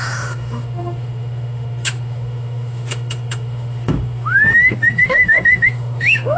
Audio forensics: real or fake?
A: fake